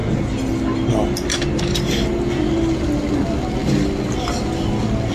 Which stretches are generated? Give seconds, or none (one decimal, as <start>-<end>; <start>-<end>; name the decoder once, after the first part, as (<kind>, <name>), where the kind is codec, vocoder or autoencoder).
none